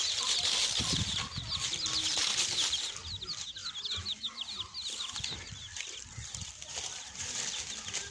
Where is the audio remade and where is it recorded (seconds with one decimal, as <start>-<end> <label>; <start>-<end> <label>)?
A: 0.0-8.1 recorded